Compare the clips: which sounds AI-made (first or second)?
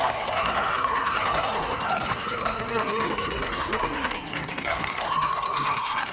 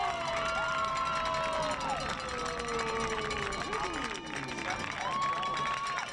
first